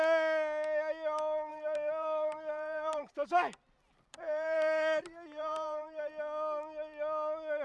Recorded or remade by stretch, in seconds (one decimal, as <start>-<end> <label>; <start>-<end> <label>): 0.0-1.5 recorded; 1.5-6.1 remade; 6.1-7.6 recorded